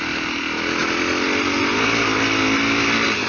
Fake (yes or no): no